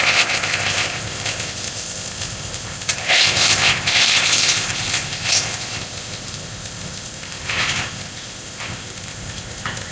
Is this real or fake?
fake